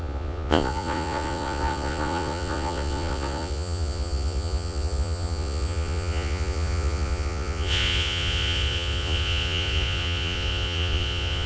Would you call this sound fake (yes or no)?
yes